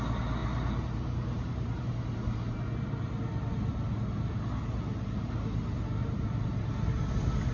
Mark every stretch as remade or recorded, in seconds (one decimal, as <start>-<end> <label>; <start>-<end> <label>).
0.0-0.4 recorded; 0.4-1.8 remade; 1.8-7.5 recorded